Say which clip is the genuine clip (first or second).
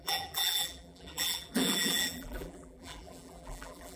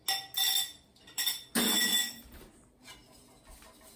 second